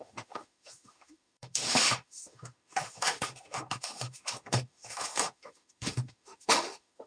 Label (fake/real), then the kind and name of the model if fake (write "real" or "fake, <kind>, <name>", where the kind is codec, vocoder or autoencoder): fake, autoencoder, DAC-VAE